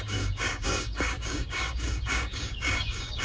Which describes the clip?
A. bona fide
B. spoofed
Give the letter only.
B